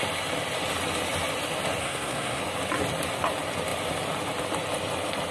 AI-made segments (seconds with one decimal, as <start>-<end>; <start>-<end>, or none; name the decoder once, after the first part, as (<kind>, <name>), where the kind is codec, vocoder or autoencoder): 1.8-2.4 (codec, SNAC)

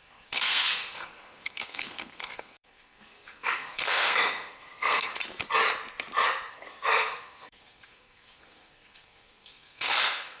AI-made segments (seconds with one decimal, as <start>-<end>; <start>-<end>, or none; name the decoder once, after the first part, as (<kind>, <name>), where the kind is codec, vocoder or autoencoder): 0.0-5.1 (codec, SNAC); 6.5-10.4

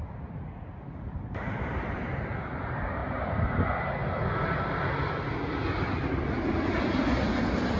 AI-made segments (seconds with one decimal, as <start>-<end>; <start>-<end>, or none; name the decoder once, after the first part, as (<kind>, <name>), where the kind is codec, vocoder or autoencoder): none

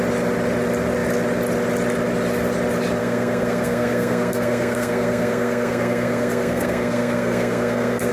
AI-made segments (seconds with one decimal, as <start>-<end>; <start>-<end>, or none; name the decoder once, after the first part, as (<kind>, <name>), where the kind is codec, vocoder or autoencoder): 3.0-8.1 (codec, SNAC)

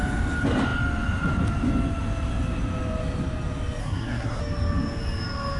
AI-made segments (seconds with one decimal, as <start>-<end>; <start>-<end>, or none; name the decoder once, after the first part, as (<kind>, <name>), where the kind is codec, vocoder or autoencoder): 3.8-4.4 (codec, SNAC)

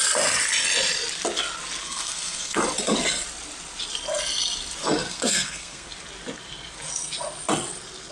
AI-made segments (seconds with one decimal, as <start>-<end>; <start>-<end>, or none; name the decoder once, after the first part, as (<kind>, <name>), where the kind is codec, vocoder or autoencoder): 1.8-2.6 (codec, SNAC); 5.1-5.9